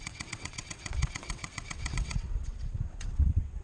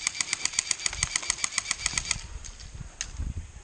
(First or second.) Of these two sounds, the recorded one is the second